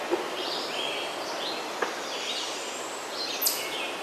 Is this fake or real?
real